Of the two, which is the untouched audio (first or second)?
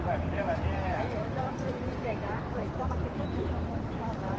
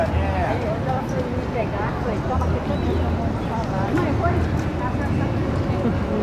second